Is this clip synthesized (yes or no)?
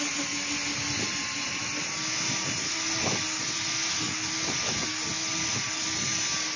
no